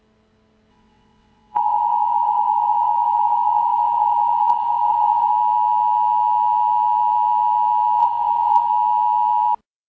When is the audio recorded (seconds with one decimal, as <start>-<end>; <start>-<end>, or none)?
0.0-0.7; 5.3-8.0; 8.7-9.9